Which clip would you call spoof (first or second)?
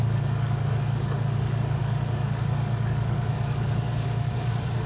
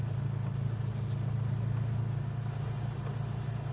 first